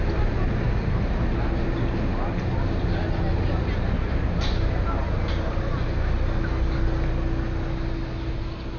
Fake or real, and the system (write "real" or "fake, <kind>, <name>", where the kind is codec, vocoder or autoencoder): real